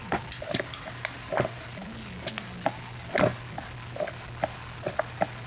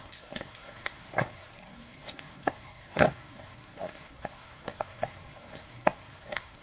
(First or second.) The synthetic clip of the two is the second